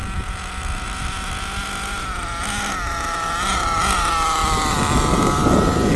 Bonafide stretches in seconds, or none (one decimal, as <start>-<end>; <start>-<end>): 0.0-6.0